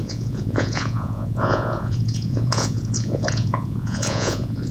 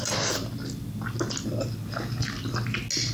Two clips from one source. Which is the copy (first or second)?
first